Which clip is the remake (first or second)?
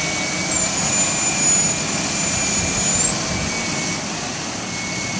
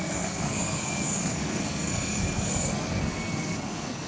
second